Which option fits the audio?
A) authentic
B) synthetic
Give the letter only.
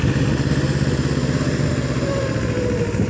A